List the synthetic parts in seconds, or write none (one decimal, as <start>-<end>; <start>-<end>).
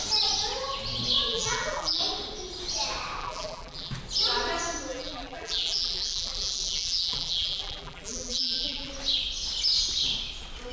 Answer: 1.3-2.0; 3.2-3.9; 4.9-8.9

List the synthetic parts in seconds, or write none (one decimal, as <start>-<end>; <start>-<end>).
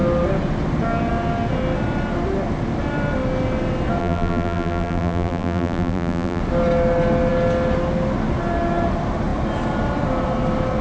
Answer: 4.0-6.4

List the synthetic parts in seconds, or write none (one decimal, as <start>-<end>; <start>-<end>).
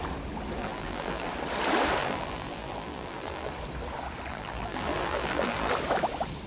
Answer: 0.6-1.3; 2.0-3.5; 4.3-5.7